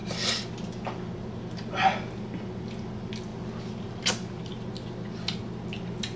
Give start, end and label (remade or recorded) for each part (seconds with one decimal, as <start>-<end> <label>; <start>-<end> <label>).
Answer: 0.0-6.2 recorded